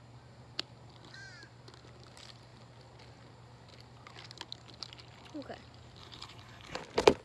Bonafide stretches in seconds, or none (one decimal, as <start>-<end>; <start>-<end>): 0.0-6.0; 6.8-7.2